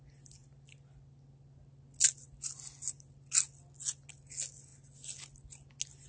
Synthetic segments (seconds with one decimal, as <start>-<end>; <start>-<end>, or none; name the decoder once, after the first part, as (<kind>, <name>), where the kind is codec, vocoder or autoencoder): none